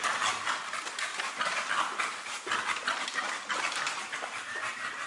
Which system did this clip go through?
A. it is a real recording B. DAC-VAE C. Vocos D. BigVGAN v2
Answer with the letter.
A